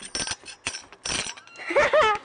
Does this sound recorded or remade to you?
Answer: recorded